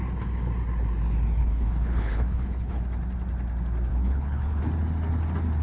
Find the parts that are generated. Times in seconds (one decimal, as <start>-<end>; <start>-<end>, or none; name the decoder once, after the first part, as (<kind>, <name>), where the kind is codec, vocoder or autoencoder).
1.4-2.8 (codec, HILCodec); 3.9-4.6